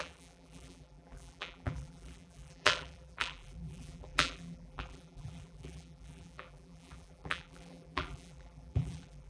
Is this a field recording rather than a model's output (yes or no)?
no